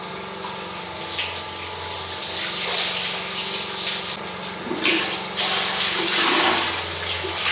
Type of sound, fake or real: real